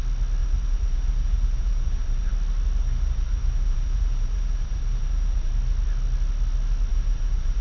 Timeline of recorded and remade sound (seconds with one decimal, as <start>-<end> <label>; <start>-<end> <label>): 0.0-0.4 recorded; 0.4-2.3 remade; 2.3-2.8 recorded; 2.8-5.5 remade; 5.5-6.9 recorded; 6.9-7.6 remade

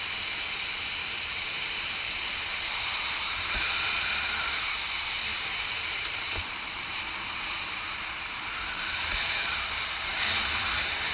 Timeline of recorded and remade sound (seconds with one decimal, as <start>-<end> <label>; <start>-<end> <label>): 0.0-1.0 recorded; 1.0-3.5 remade; 3.5-5.3 recorded; 5.3-7.0 remade; 7.0-11.1 recorded

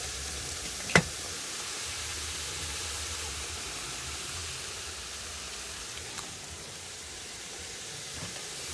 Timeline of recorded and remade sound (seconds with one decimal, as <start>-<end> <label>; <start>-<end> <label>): 0.0-4.4 remade; 4.4-6.1 recorded; 6.1-8.7 remade

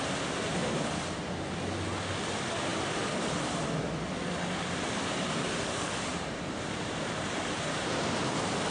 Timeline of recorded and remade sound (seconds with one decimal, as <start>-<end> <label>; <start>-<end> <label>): 0.0-0.6 recorded; 0.6-1.3 remade; 1.3-6.1 recorded; 6.1-8.7 remade